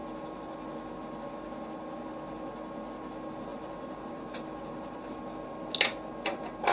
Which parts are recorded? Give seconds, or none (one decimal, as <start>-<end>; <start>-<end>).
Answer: 0.0-3.5; 5.2-6.7